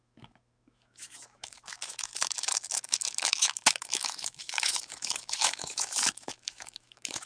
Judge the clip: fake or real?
fake